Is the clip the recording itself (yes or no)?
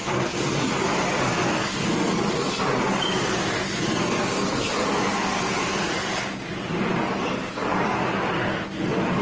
yes